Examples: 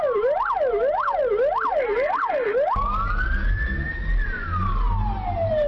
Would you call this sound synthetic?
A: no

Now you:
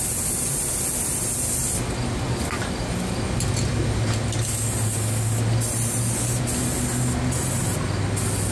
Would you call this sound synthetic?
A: no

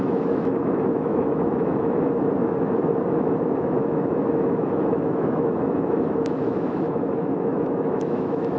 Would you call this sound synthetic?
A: yes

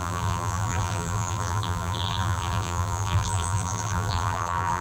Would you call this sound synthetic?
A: yes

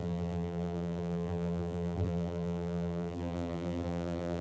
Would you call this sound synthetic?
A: yes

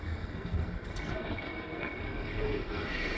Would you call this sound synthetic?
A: yes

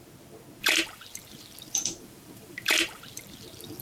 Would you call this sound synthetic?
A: yes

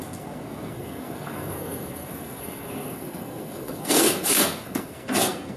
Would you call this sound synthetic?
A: yes